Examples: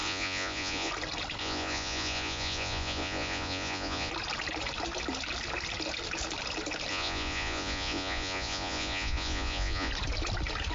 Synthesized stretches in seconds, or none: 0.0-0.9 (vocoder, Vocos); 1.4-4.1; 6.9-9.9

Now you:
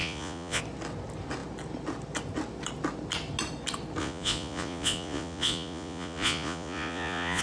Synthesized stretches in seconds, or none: 0.0-0.6 (vocoder, Vocos); 4.0-7.4

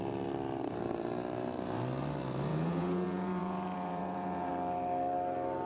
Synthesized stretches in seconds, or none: 2.5-4.5 (vocoder, Vocos)

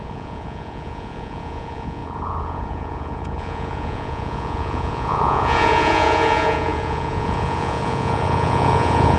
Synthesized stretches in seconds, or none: 0.0-9.2 (vocoder, Vocos)

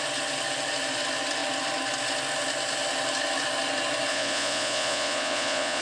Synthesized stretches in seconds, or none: 4.1-5.8 (vocoder, Vocos)

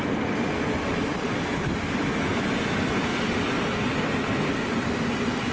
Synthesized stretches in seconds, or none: none